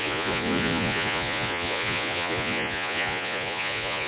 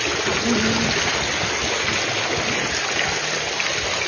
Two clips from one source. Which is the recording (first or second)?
second